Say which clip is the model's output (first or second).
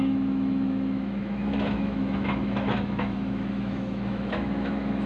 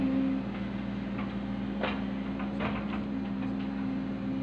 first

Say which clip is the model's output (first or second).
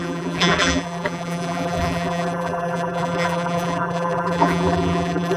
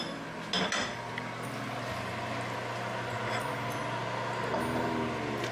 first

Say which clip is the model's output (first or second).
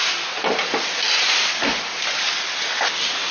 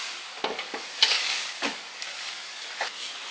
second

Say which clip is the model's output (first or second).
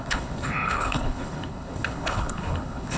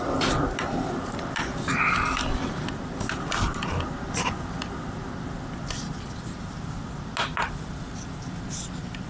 first